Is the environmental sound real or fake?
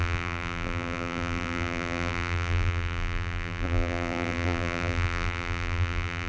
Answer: fake